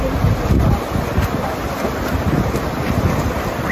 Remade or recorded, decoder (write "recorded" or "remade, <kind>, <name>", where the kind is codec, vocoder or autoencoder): recorded